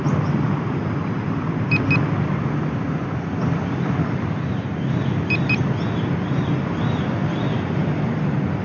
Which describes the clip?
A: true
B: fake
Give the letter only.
A